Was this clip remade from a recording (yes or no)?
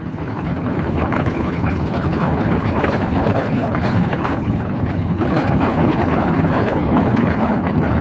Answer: yes